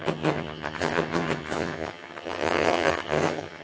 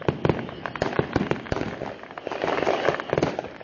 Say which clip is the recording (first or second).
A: second